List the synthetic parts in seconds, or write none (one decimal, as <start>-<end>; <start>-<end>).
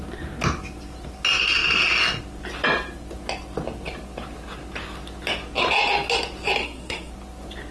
6.6-7.1